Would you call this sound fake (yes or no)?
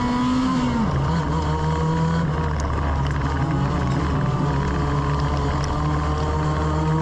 no